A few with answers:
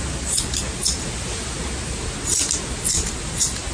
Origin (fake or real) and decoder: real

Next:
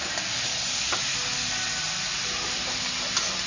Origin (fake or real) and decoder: real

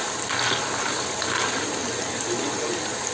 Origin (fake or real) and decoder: real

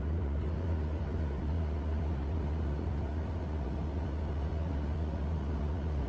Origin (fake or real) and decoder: fake, vocoder, Vocos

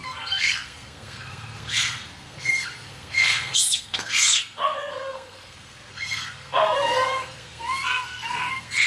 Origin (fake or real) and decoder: fake, codec, SNAC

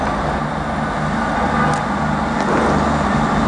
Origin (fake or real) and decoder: real